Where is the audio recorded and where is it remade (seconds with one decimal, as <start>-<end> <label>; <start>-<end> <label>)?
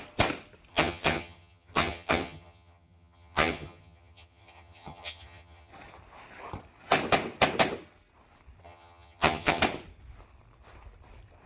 0.0-0.7 recorded; 0.7-5.7 remade; 5.7-8.6 recorded; 8.6-9.6 remade; 9.6-11.5 recorded